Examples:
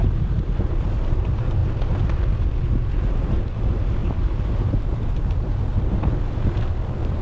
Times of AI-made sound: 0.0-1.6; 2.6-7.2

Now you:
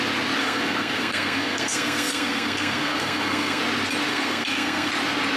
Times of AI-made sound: 0.4-3.6; 4.1-4.9

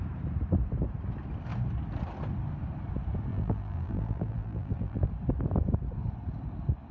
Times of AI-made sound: 3.3-5.1

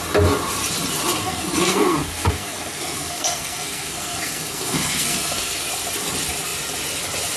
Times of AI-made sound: 1.2-5.6